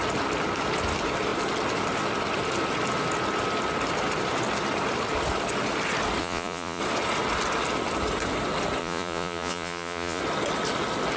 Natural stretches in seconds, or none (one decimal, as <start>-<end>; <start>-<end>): 0.0-6.2; 6.8-8.8; 10.2-11.2